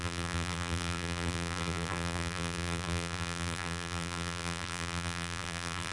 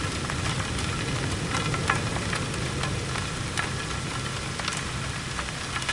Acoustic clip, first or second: second